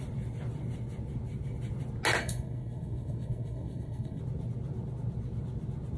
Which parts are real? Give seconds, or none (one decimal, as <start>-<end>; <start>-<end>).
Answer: 0.0-2.2; 4.2-6.0